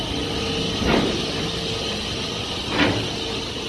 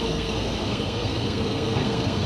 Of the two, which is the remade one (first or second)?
second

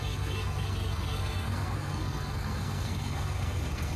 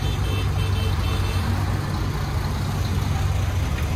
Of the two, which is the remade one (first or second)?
first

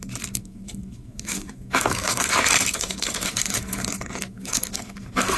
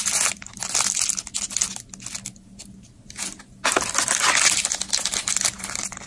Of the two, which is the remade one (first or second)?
first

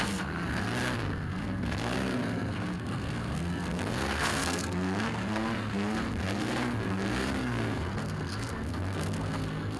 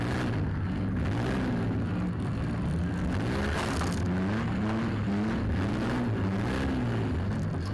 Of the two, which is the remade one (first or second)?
first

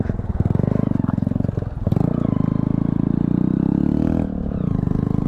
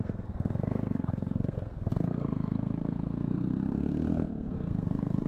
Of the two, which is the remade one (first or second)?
second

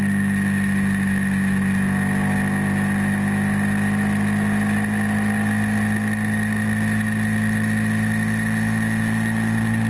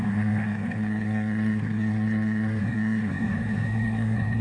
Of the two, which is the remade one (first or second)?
second